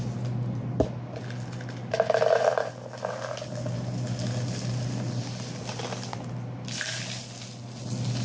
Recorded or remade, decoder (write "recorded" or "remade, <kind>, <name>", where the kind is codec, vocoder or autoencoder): recorded